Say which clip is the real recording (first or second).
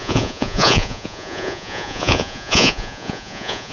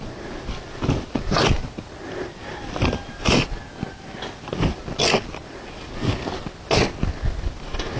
second